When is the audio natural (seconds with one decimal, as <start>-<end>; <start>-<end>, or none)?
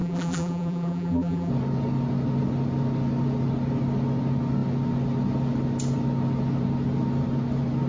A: 1.5-7.9